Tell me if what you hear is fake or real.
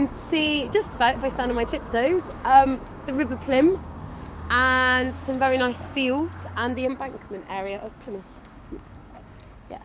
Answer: fake